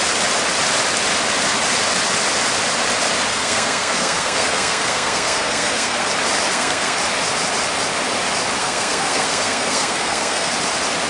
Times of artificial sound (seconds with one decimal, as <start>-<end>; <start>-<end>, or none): 3.3-6.1; 6.5-7.0; 8.6-10.5